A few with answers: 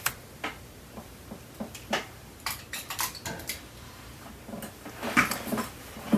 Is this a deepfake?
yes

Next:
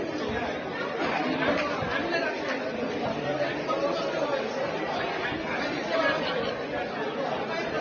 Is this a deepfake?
yes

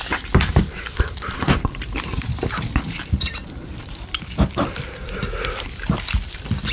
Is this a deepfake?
yes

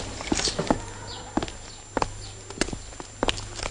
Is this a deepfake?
no